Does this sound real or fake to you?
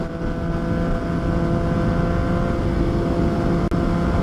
real